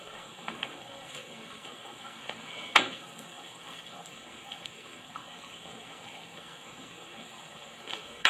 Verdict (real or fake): fake